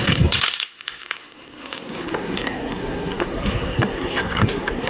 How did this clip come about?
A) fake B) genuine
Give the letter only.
A